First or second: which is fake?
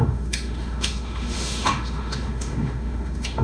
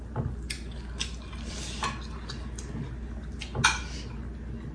first